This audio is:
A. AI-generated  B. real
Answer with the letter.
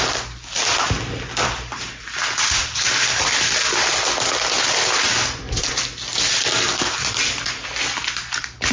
B